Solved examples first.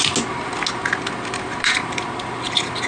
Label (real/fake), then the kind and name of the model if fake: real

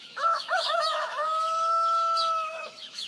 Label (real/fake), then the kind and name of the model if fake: fake, autoencoder, DAC-VAE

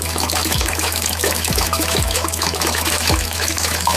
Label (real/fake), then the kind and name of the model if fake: fake, autoencoder, DAC-VAE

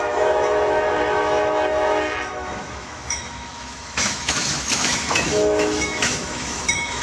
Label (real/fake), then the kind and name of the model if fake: fake, autoencoder, DAC-VAE